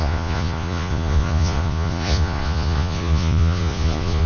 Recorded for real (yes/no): no